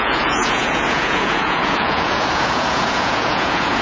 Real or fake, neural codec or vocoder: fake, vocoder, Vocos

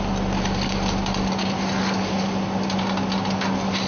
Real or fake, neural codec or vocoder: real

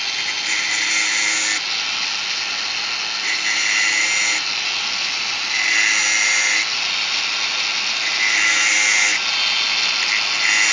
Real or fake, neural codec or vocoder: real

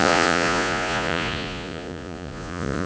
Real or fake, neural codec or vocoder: fake, vocoder, Vocos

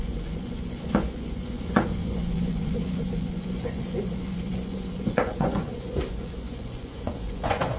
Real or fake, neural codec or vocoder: fake, vocoder, Vocos